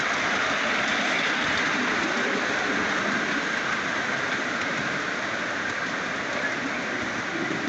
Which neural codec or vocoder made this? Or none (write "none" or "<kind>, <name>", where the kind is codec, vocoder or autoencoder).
none